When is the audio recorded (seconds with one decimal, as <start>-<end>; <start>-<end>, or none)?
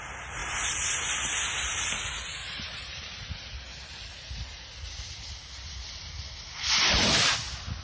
0.0-2.4; 3.3-7.8